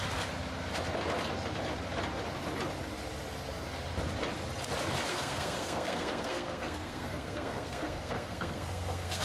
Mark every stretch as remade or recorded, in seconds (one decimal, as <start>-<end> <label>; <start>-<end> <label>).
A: 0.0-5.1 recorded; 5.1-9.2 remade